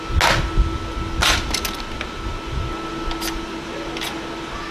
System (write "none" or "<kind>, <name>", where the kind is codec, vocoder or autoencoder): none